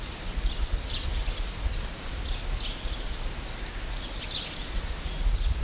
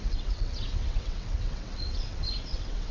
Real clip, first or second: first